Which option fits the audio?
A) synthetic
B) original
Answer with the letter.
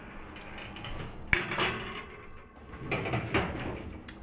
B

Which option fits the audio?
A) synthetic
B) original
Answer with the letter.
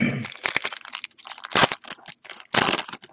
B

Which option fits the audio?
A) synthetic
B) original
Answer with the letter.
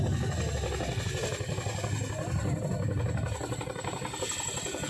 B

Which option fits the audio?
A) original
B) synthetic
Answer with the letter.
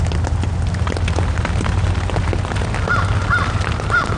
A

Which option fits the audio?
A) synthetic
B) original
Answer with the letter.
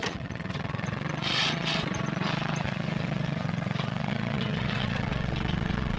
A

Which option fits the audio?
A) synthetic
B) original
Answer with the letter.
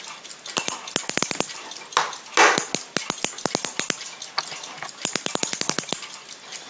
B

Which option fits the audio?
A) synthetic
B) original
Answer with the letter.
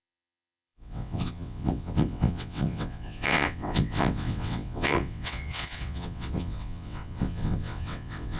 A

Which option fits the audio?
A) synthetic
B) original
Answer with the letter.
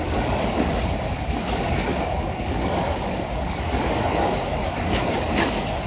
A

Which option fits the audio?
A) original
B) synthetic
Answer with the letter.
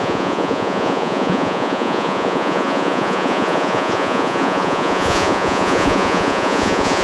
B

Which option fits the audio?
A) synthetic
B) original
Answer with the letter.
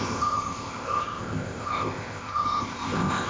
A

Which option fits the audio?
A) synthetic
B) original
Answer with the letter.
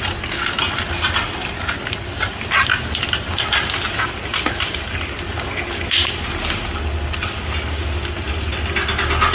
B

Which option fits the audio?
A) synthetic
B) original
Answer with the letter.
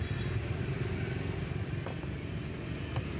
B